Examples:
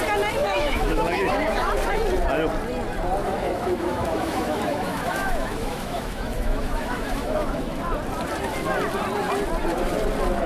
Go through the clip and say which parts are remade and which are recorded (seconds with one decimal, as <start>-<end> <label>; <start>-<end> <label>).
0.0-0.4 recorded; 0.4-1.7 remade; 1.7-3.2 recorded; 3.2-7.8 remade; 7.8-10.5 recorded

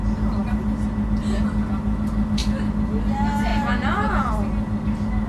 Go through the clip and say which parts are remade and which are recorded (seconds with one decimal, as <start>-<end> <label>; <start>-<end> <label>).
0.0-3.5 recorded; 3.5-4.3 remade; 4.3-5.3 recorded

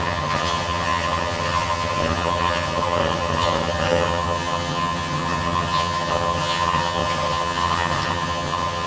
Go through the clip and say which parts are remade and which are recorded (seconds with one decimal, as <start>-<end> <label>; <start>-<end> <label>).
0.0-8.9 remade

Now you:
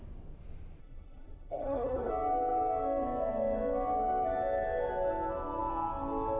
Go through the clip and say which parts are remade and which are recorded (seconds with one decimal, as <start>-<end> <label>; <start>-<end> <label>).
0.0-0.8 recorded; 0.8-2.1 remade; 2.1-6.4 recorded

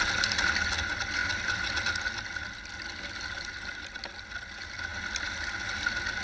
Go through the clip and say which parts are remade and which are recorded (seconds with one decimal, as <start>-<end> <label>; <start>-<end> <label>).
0.0-6.2 recorded